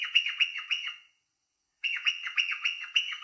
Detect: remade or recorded remade